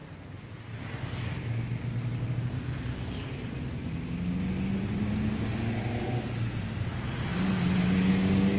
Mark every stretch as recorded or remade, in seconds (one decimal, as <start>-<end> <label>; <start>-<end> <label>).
0.0-8.6 recorded